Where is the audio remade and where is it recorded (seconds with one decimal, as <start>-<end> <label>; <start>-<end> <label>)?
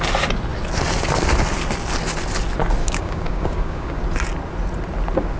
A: 0.0-2.8 recorded; 2.8-4.0 remade; 4.0-5.4 recorded